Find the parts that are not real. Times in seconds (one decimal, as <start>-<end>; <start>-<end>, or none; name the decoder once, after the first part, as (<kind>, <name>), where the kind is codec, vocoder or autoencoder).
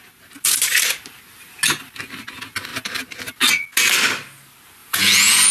4.8-5.5 (vocoder, Vocos)